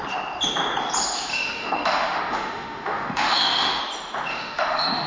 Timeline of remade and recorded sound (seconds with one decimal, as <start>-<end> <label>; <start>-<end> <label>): 0.0-1.3 recorded; 1.3-3.8 remade; 3.8-4.3 recorded; 4.3-5.1 remade